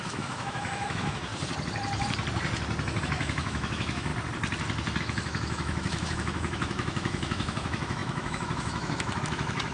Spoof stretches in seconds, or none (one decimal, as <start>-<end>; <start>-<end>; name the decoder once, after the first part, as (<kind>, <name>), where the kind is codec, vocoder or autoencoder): 0.0-1.3 (autoencoder, DAC-VAE); 3.0-4.1; 5.0-9.7